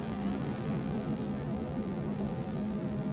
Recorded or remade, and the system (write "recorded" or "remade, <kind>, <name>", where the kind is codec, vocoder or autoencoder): remade, vocoder, BigVGAN v2